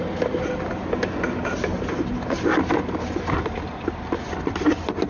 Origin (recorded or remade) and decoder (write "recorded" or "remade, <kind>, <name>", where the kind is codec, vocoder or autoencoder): recorded